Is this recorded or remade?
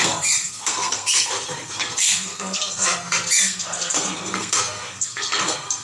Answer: remade